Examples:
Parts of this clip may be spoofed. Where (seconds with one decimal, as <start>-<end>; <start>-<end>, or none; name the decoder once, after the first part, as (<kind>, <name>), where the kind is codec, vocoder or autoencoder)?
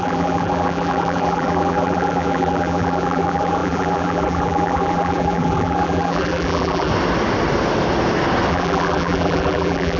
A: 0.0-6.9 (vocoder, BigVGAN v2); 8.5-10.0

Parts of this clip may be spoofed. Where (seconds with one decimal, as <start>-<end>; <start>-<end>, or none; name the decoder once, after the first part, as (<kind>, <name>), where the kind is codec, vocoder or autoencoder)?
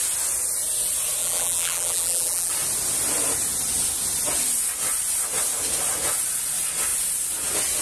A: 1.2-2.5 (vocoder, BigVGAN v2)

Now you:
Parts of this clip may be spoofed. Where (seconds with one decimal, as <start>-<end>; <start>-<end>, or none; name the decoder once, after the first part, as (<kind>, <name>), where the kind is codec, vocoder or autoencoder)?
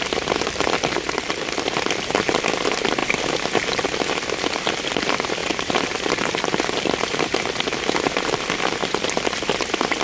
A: 0.0-3.0 (vocoder, BigVGAN v2); 3.8-10.0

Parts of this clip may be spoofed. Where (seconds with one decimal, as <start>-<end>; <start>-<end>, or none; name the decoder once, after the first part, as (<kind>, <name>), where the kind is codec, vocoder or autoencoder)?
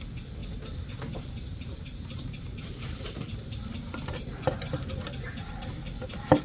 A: 0.4-4.2 (vocoder, BigVGAN v2)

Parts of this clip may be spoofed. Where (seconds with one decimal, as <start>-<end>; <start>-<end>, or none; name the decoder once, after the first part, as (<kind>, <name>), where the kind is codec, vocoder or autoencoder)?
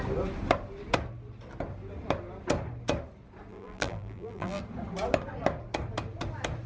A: 3.5-4.6 (vocoder, BigVGAN v2)